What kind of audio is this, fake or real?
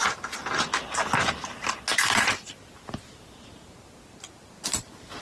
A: real